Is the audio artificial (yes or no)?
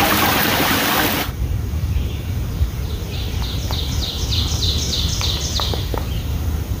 no